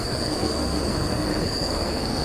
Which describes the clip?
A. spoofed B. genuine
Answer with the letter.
A